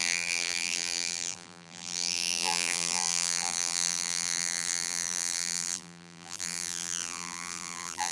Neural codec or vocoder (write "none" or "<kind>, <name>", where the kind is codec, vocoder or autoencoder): vocoder, BigVGAN v2